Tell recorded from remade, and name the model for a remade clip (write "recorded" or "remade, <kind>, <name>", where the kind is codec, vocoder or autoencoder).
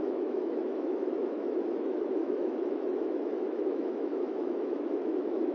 remade, autoencoder, DAC-VAE